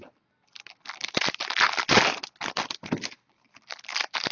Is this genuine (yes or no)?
yes